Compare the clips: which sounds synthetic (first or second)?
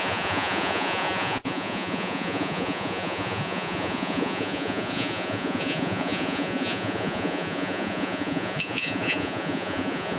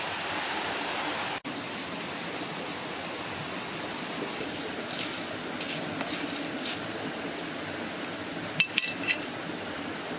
first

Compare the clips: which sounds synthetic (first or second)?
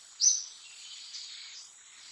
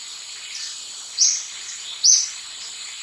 first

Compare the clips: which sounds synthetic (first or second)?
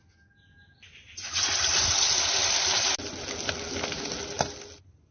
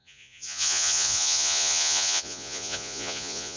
second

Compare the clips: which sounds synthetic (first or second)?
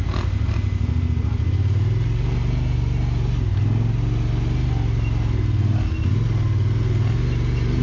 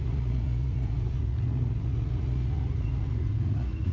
second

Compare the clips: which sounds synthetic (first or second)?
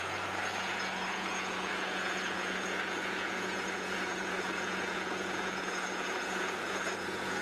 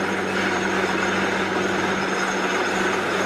first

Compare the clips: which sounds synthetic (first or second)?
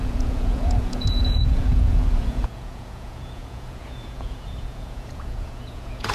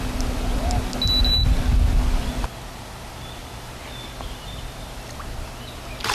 first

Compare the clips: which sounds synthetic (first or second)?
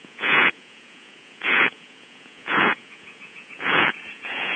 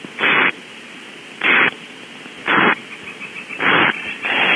first